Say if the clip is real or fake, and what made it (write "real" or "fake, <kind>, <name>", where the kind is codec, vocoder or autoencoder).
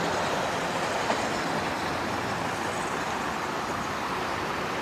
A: real